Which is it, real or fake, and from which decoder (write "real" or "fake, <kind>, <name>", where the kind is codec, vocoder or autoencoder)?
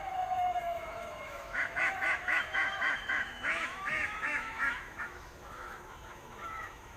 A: fake, autoencoder, DAC-VAE